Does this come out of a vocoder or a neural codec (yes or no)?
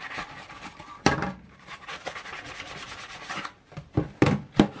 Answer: yes